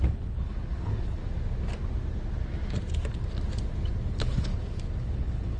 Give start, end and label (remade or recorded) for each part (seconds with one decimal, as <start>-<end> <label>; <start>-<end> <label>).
0.0-1.2 remade; 1.2-4.1 recorded; 4.1-4.5 remade; 4.5-5.0 recorded; 5.0-5.6 remade